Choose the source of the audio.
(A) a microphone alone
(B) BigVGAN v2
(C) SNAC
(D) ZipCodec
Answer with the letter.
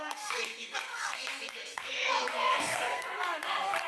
C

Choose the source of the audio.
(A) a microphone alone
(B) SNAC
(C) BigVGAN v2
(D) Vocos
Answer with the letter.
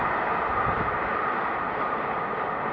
A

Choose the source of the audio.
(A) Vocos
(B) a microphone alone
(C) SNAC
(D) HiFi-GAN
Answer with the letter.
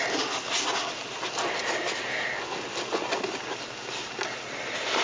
B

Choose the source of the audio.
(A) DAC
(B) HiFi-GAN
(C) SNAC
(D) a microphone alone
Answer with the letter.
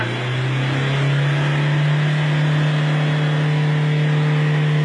D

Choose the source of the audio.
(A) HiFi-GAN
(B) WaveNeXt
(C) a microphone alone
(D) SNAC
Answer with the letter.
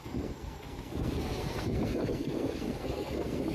D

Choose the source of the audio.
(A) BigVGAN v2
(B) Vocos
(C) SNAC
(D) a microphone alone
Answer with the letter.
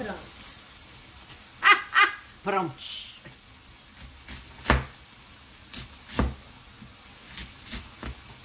D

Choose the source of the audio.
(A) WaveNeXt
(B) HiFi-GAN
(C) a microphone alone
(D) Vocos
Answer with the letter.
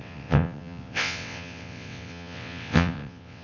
A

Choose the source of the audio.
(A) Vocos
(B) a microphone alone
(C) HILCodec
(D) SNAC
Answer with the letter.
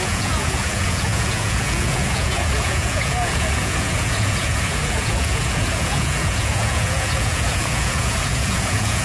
A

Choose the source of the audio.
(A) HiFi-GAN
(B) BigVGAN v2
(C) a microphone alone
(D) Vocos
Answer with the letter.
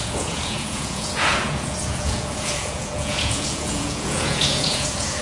D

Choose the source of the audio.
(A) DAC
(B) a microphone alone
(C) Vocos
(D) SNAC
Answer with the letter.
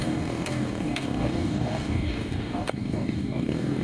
A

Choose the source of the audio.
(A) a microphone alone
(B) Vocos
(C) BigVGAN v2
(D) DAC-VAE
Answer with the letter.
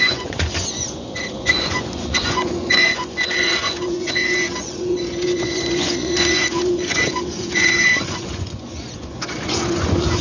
B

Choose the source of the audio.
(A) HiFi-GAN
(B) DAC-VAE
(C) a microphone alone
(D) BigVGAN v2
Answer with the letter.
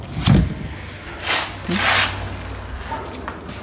C